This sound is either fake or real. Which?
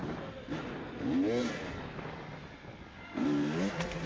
real